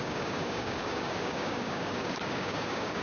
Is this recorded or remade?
remade